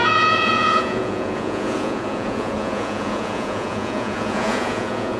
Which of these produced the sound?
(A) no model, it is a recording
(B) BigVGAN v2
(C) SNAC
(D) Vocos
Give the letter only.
D